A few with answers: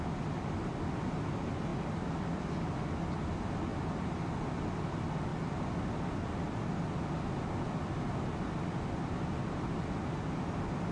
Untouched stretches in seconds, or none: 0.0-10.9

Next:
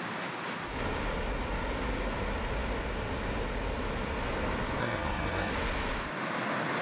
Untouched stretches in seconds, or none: 0.0-4.8; 5.5-6.8

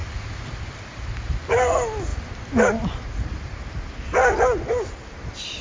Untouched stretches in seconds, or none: 1.4-5.6

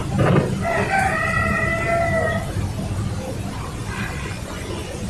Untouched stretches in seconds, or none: 0.0-3.8